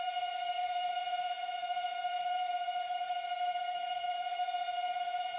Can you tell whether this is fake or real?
fake